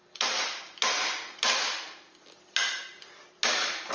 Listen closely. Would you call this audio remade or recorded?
recorded